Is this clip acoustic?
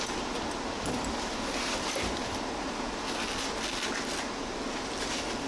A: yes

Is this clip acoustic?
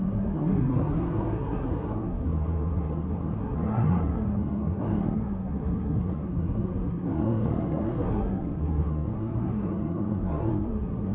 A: no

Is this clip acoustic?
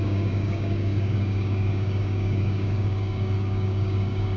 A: no